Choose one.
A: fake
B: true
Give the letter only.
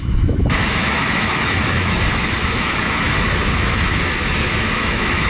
A